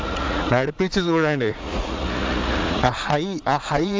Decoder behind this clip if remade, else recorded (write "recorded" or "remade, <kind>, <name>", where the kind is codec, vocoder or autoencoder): remade, vocoder, Vocos